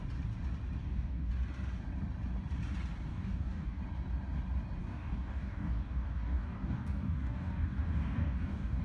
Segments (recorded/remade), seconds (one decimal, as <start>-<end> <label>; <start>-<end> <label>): 0.0-0.8 recorded; 0.8-1.3 remade; 1.3-3.1 recorded; 3.1-3.8 remade; 3.8-4.8 recorded; 4.8-8.8 remade